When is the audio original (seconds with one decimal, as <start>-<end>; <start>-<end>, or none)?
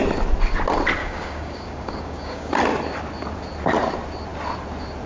0.0-1.0; 2.5-5.1